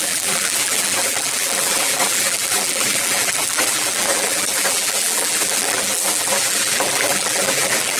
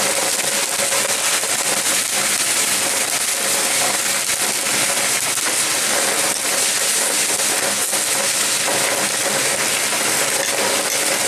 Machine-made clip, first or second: first